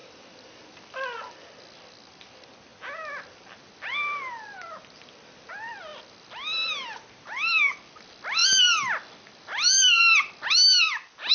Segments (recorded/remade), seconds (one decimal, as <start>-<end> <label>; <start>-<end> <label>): 0.0-1.3 remade; 1.3-11.3 recorded